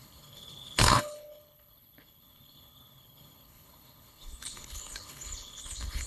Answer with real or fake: fake